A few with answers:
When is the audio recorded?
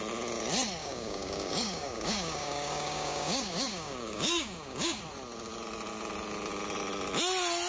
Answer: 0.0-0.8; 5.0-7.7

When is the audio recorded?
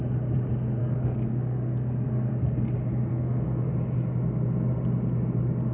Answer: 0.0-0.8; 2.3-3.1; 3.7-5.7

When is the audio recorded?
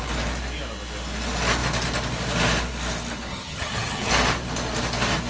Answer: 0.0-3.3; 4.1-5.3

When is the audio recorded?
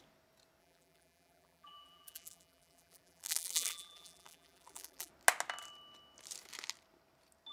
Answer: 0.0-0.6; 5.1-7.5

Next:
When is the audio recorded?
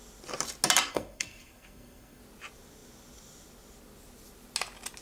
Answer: 0.0-0.9; 2.2-5.0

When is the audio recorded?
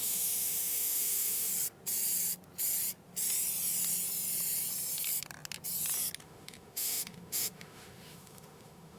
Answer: 1.5-6.2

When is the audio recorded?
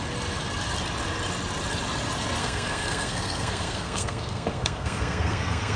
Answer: 0.0-2.4